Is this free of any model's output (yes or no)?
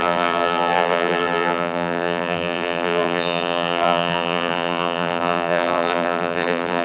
no